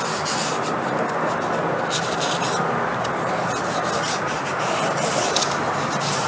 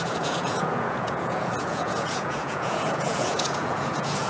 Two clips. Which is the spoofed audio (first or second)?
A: second